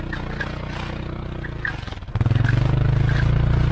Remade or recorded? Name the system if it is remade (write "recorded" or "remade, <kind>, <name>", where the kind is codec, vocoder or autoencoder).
recorded